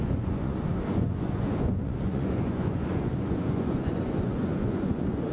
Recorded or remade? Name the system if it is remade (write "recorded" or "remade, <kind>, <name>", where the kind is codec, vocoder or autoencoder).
remade, vocoder, Vocos